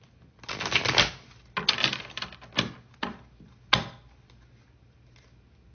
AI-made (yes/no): no